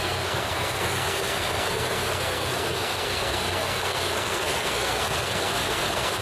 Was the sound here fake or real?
fake